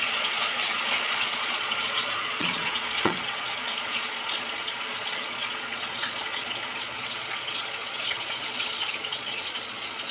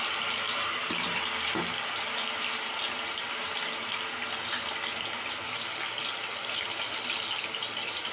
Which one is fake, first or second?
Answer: first